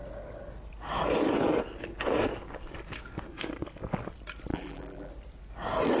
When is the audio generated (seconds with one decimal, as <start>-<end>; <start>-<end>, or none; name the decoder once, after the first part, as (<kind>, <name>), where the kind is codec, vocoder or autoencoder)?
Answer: 4.5-5.1 (vocoder, BigVGAN v2)